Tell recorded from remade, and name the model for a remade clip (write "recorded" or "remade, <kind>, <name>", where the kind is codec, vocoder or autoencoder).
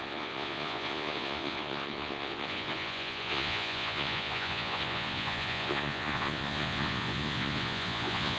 remade, vocoder, Vocos